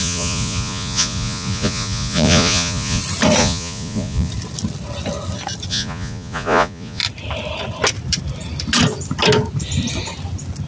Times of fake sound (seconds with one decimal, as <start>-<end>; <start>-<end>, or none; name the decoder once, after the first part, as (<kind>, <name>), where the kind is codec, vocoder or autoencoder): 0.0-3.0 (vocoder, Vocos); 3.4-4.3; 5.7-7.0